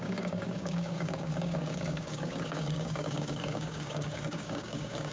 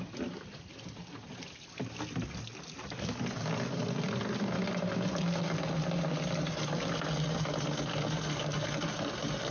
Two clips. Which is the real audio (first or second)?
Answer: second